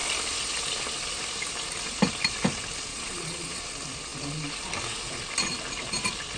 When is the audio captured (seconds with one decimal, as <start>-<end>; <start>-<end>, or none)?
0.0-2.9; 3.6-6.4